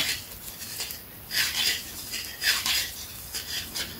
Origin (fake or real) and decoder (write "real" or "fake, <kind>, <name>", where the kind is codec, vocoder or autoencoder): real